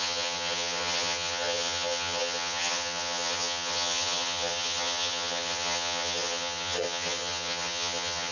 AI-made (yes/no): yes